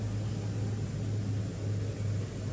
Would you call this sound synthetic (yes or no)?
no